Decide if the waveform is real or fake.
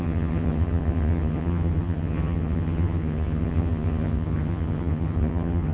fake